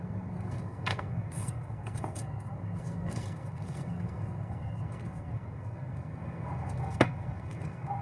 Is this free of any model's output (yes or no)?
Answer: no